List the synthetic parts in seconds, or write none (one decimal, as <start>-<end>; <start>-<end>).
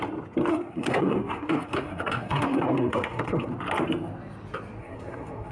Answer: 0.5-3.5; 4.8-5.5